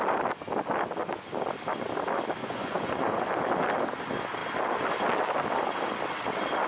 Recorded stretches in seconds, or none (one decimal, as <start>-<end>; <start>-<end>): 0.0-2.4; 3.3-6.7